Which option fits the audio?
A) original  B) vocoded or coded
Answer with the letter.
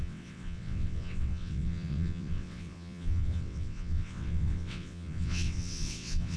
B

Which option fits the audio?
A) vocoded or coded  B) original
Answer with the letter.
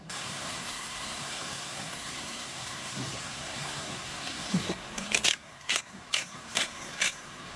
A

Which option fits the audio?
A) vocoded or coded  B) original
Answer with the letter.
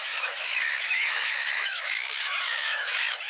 A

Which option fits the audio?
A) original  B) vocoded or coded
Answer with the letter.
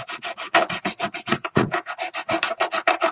B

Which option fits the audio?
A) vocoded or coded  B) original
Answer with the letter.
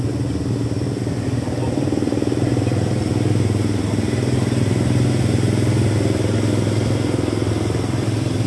B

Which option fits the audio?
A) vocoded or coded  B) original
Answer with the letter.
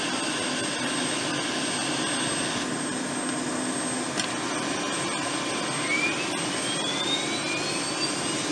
B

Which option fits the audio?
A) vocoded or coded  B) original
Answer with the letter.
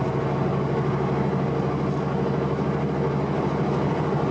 B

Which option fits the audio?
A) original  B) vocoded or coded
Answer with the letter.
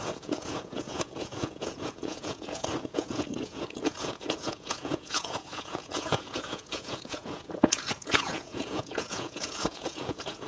B